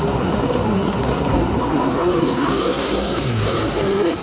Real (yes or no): no